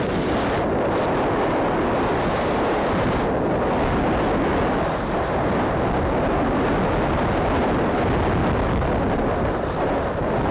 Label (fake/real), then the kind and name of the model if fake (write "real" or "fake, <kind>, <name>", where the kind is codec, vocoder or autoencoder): real